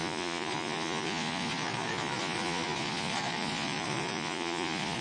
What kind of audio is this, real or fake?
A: fake